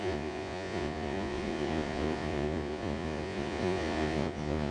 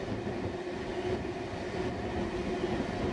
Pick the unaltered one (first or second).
second